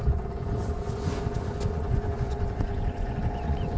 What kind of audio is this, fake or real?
fake